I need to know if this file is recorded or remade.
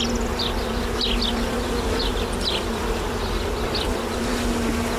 recorded